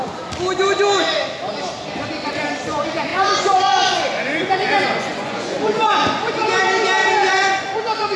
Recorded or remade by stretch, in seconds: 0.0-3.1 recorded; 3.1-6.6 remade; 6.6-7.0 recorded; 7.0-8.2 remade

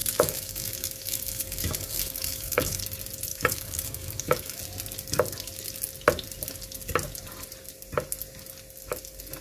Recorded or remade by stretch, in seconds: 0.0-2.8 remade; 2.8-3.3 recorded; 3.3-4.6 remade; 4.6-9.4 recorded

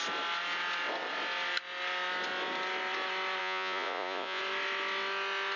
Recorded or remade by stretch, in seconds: 0.0-3.4 recorded; 3.4-4.4 remade; 4.4-5.6 recorded

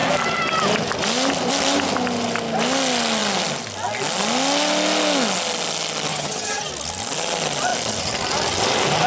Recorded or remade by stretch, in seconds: 0.0-6.1 recorded; 6.1-6.7 remade; 6.7-9.1 recorded

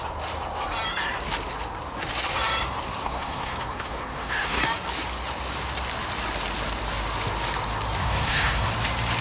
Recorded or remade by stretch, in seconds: 0.0-3.0 recorded; 3.0-4.6 remade; 4.6-8.0 recorded; 8.0-8.7 remade; 8.7-9.2 recorded

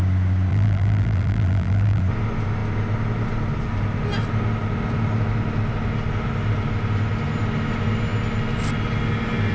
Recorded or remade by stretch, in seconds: 0.0-0.5 recorded; 0.5-2.0 remade; 2.0-9.5 recorded

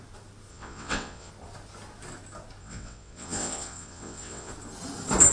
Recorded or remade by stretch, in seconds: 0.0-0.5 recorded; 0.5-1.3 remade; 1.3-2.6 recorded; 2.6-4.5 remade; 4.5-5.3 recorded